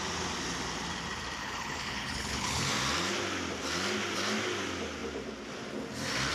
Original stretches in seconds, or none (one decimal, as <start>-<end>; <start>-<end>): 0.0-1.4; 2.7-6.3